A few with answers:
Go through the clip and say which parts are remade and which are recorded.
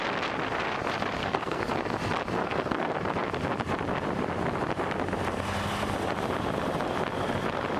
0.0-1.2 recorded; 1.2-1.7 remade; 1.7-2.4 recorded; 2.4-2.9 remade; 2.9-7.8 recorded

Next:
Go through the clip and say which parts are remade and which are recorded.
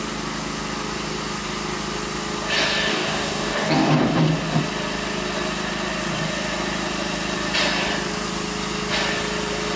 0.0-2.9 recorded; 2.9-3.9 remade; 3.9-9.8 recorded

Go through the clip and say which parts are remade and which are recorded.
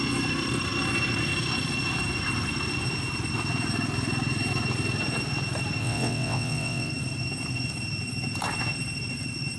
0.0-5.8 recorded; 5.8-6.9 remade; 6.9-9.6 recorded